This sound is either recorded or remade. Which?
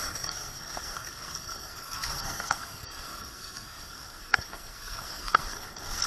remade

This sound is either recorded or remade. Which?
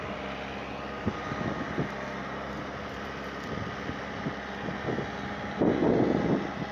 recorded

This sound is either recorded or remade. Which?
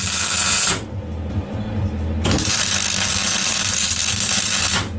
recorded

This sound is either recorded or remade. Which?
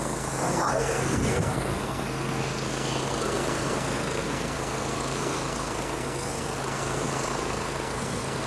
remade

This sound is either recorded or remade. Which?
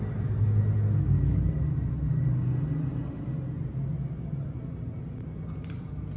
recorded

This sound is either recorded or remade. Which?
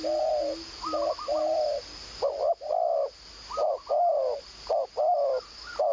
recorded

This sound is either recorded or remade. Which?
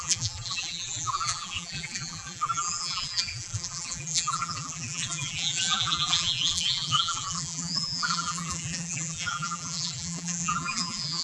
remade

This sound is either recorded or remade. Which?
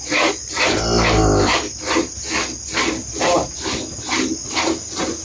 recorded